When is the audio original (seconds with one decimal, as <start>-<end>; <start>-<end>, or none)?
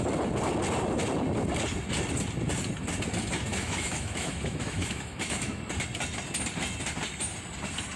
0.0-3.5; 5.6-8.0